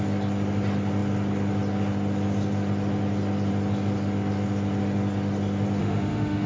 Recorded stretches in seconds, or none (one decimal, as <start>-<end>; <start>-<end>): 0.0-5.8